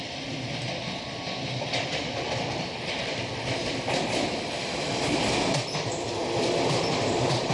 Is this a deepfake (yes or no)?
no